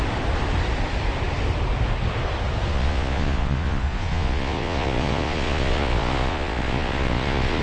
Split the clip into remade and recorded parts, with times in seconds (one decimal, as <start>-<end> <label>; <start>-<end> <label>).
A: 0.0-2.7 recorded; 2.7-7.6 remade